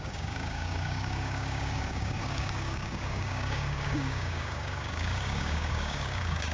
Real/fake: fake